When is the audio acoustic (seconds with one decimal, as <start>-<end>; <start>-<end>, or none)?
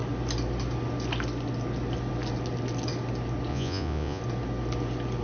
0.0-3.5; 4.2-5.2